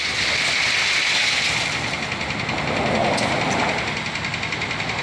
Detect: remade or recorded recorded